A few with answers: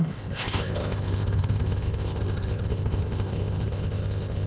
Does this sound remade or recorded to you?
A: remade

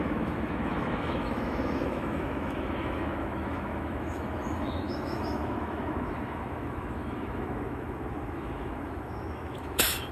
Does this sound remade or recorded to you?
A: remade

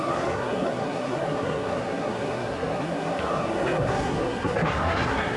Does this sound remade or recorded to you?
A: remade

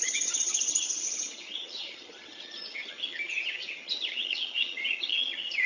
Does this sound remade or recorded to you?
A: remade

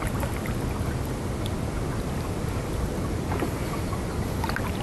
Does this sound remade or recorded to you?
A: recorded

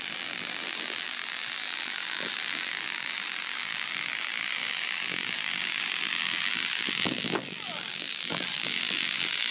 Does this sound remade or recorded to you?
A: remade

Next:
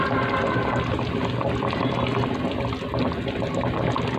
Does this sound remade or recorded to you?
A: recorded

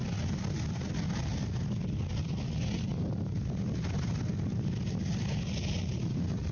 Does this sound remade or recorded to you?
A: recorded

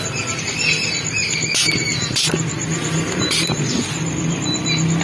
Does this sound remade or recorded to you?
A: recorded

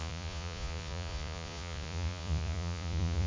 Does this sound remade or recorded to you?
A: remade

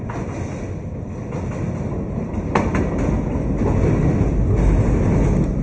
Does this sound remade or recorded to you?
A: recorded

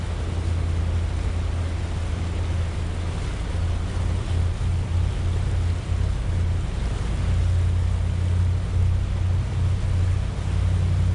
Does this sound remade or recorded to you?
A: recorded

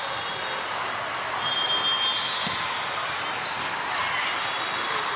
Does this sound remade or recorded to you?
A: recorded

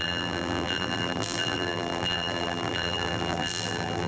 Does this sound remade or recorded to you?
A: remade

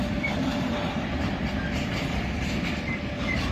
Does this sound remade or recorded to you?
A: recorded